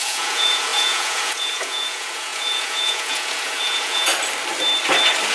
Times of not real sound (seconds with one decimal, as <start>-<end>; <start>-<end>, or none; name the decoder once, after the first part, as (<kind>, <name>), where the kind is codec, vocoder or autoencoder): 0.0-4.1 (vocoder, Vocos)